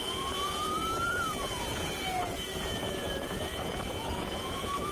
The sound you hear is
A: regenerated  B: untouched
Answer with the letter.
A